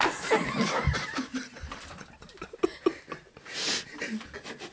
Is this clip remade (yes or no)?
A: no